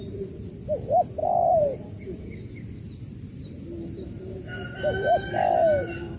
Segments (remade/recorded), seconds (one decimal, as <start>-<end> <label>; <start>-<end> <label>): 0.0-1.2 recorded; 1.2-2.4 remade; 2.4-6.2 recorded